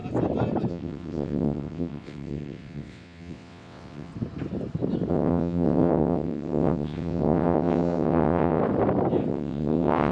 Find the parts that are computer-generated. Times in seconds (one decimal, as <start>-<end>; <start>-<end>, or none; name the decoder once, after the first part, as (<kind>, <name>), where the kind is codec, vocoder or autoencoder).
0.7-4.1 (vocoder, WaveNeXt); 5.1-8.6; 9.3-10.1